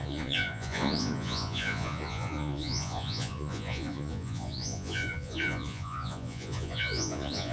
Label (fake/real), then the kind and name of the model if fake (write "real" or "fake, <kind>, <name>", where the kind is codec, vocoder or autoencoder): fake, vocoder, Vocos